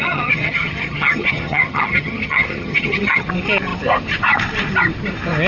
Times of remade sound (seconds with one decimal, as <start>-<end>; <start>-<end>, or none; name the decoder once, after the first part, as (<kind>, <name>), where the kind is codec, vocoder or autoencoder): 0.0-3.3 (vocoder, HiFi-GAN)